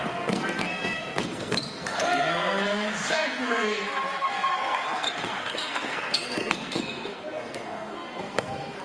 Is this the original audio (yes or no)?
no